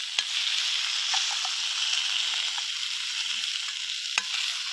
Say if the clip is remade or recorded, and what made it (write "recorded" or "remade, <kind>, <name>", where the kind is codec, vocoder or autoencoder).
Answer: recorded